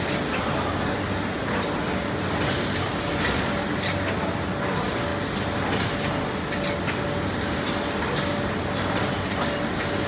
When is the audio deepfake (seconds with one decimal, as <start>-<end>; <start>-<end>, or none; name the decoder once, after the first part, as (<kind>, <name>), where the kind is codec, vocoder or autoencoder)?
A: none